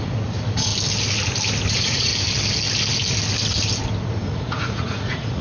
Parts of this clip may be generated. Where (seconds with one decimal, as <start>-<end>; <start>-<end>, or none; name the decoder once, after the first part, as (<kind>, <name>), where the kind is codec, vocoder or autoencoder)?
0.0-0.7 (vocoder, Vocos); 1.7-2.1; 4.0-5.4